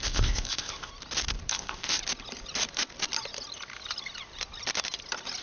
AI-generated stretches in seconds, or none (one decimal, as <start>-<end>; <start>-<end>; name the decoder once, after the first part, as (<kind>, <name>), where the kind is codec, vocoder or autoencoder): 0.0-0.9 (codec, ZipCodec); 1.5-2.0